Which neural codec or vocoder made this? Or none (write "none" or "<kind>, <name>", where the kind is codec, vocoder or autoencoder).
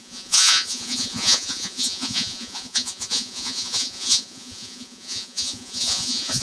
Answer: vocoder, Vocos